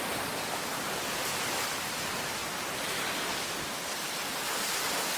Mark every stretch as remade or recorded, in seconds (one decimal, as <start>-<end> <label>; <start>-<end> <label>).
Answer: 0.0-2.4 recorded; 2.4-3.7 remade; 3.7-5.2 recorded